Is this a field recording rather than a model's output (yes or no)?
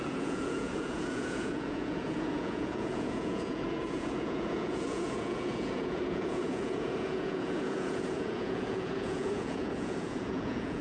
no